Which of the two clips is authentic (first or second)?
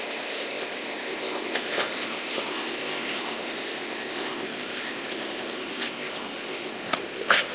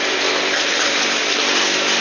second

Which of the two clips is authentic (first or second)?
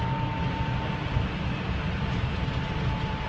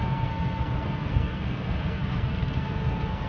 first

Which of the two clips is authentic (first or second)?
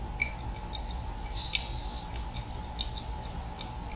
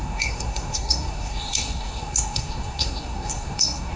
first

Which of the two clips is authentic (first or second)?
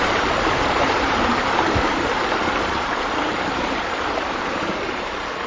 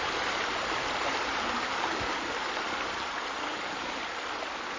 second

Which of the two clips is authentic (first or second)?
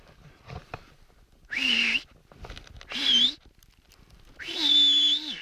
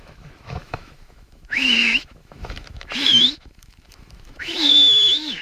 first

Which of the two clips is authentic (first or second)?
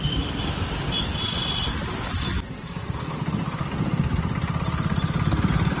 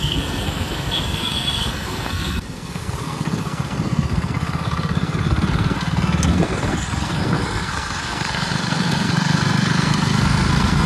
first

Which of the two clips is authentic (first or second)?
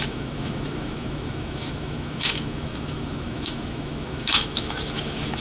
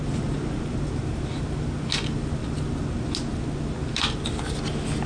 second